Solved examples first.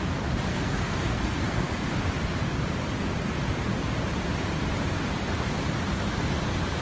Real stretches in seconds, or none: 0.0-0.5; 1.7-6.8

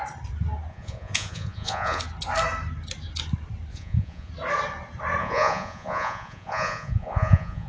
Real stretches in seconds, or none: 0.0-0.7; 2.0-3.7; 4.3-5.2

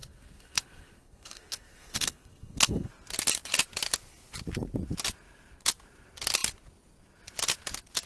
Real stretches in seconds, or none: 2.9-8.1